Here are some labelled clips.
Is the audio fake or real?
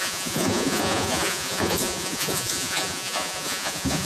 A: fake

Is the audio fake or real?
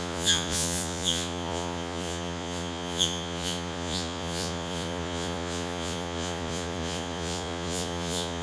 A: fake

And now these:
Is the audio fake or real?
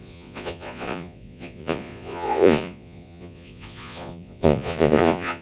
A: fake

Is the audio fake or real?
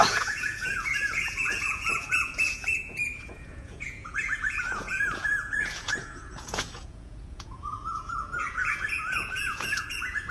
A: fake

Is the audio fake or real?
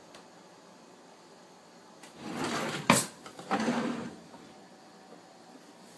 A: real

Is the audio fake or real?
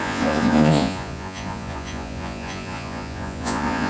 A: fake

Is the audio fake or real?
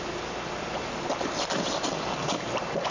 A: real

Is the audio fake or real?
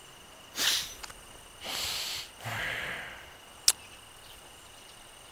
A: real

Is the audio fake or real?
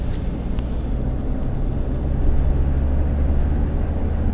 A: real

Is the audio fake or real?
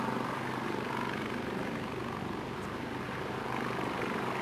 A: real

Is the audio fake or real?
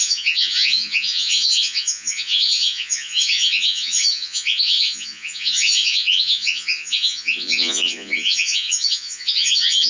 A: fake